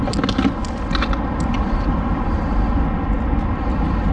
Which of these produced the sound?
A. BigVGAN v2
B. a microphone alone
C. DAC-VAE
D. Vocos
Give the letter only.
B